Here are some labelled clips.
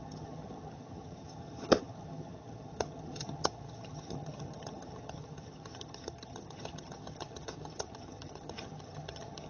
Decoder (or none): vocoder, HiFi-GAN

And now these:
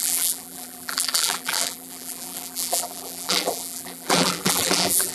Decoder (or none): vocoder, BigVGAN v2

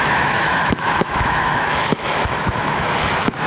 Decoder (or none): autoencoder, DAC-VAE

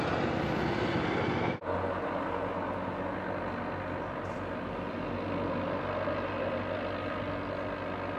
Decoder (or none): none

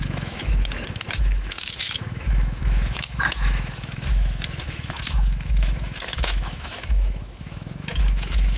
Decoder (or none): autoencoder, DAC-VAE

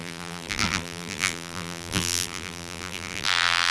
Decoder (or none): vocoder, BigVGAN v2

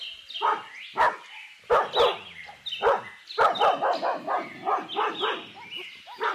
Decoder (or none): none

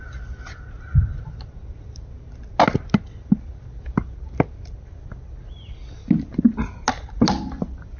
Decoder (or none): none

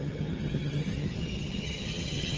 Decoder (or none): vocoder, HiFi-GAN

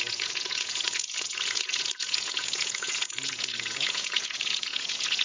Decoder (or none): vocoder, Vocos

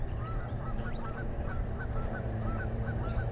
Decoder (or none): vocoder, BigVGAN v2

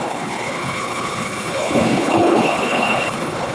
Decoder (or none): codec, HILCodec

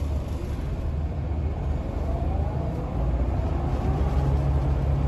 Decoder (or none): none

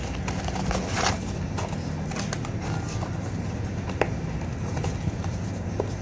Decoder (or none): none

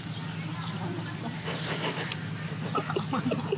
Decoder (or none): none